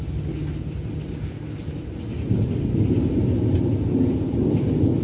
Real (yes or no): yes